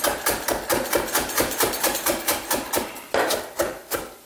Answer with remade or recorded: remade